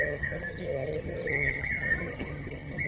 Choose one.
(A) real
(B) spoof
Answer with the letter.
B